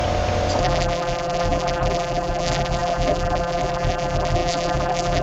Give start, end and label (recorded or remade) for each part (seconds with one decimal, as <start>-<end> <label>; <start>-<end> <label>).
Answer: 0.0-0.6 recorded; 0.6-5.2 remade